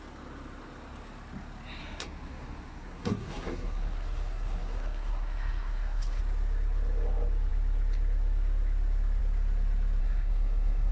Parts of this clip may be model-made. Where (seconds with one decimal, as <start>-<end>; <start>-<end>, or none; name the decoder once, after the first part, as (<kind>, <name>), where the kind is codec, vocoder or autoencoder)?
1.8-6.2 (codec, SNAC); 10.0-10.9